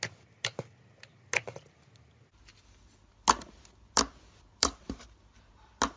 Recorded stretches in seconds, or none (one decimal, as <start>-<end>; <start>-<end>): 0.0-4.5; 5.2-6.0